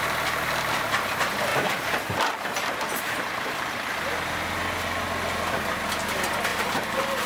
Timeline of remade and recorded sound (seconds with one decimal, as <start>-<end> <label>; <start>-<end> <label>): 0.0-1.5 recorded; 1.5-3.8 remade; 3.8-6.5 recorded; 6.5-7.3 remade